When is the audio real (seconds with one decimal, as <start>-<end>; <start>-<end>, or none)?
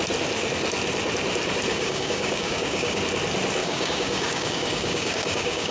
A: 0.0-1.7; 3.0-3.6